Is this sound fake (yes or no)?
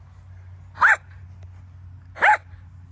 no